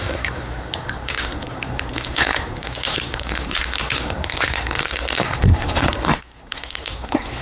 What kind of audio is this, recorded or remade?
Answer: remade